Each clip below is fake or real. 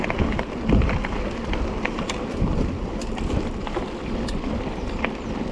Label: fake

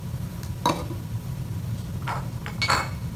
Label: real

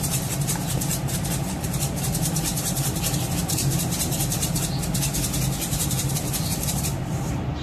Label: fake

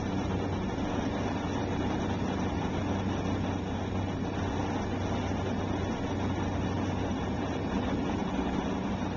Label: real